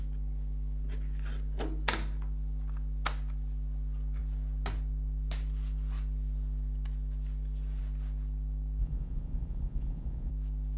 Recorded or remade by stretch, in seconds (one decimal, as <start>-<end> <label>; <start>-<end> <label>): 0.0-8.8 recorded; 8.8-10.3 remade; 10.3-10.8 recorded